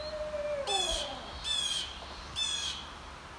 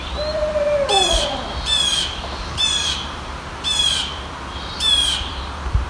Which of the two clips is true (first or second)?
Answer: first